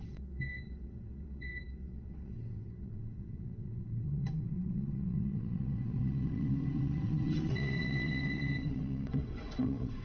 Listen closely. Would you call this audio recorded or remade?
remade